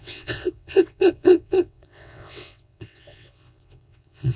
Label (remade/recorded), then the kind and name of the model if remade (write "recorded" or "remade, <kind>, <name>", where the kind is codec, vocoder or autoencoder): remade, vocoder, WaveNeXt